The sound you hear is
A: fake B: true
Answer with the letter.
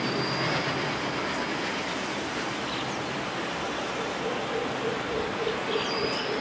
B